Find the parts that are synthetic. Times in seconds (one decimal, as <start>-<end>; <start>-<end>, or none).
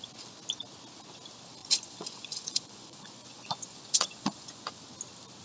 1.6-4.7